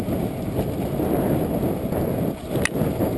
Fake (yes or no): no